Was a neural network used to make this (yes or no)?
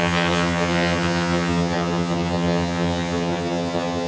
yes